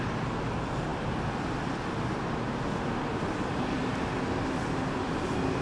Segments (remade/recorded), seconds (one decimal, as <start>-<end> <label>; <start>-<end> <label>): 0.0-5.6 recorded